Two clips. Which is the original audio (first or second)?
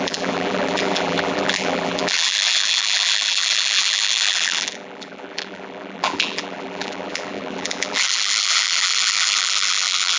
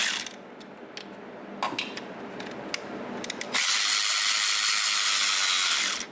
second